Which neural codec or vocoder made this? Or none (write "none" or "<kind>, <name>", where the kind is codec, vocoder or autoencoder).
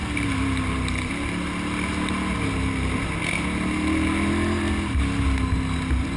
none